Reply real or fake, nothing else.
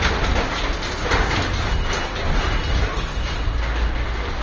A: real